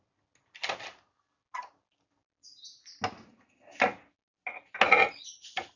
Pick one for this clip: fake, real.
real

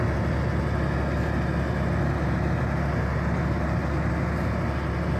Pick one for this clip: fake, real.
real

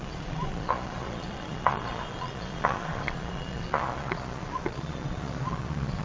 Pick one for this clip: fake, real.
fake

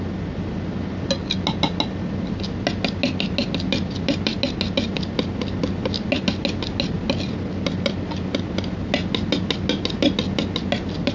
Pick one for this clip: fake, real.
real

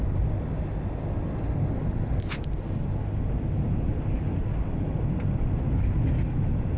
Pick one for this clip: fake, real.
real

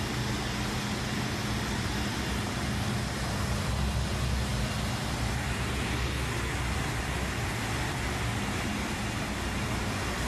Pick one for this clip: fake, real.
real